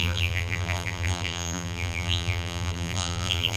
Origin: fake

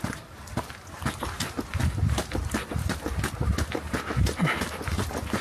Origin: real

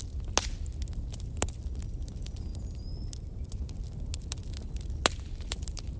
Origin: real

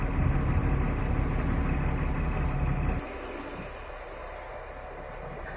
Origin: real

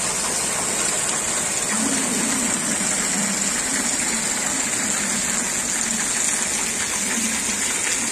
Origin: real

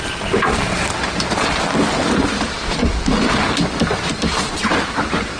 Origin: real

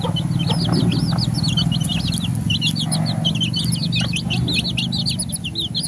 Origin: real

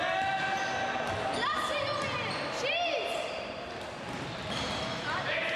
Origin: real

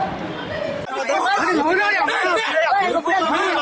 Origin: fake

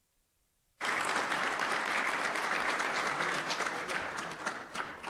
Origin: fake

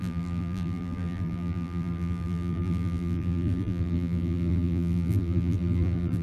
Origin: fake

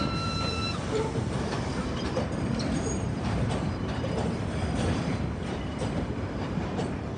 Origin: fake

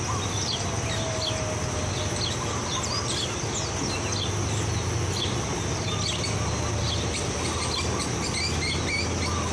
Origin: fake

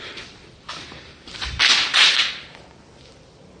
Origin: real